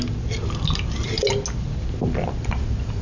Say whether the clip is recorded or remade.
recorded